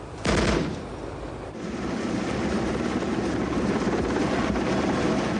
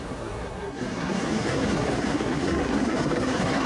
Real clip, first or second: first